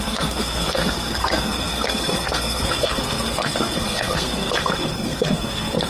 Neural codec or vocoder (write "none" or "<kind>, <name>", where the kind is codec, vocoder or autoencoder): codec, SNAC